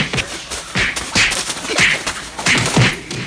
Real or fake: real